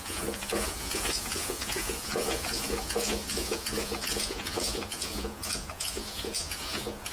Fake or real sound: fake